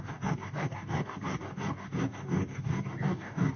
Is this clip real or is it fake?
fake